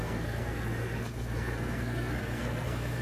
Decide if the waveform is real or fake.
fake